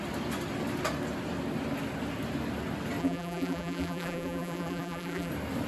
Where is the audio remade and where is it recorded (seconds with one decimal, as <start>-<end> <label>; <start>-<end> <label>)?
0.0-3.0 recorded; 3.0-5.3 remade; 5.3-5.7 recorded